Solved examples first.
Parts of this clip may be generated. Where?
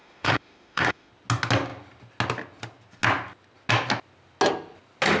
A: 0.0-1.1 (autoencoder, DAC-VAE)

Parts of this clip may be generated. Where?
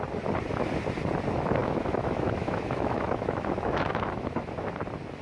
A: 1.6-4.7 (autoencoder, DAC-VAE)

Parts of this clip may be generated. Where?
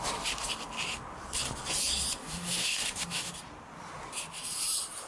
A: 2.2-3.3 (autoencoder, DAC-VAE)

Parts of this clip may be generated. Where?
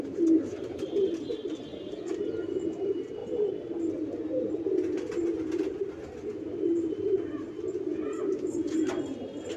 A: none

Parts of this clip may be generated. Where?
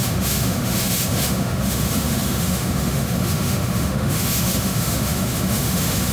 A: 0.0-6.1 (autoencoder, DAC-VAE)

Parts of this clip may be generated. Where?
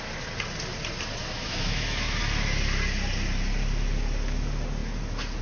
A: 1.2-2.2 (autoencoder, DAC-VAE)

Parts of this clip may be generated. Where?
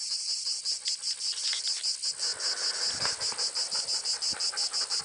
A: none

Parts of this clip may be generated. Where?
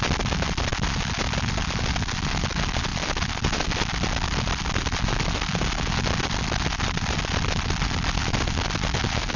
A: none